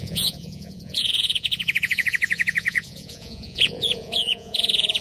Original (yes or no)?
no